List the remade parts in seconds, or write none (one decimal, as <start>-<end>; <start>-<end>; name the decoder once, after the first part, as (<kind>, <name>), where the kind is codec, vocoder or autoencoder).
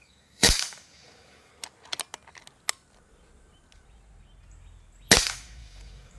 0.0-1.5 (codec, DAC); 5.2-6.2